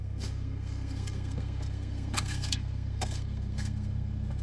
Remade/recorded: remade